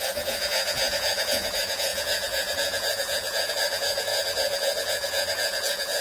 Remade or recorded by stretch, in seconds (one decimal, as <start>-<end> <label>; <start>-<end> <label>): 0.0-6.0 remade